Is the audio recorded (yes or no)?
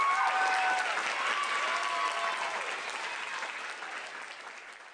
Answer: yes